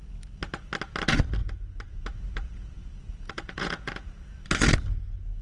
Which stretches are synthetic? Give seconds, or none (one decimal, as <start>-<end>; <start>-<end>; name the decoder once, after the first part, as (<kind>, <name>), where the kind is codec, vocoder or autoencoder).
1.4-4.3 (vocoder, Vocos)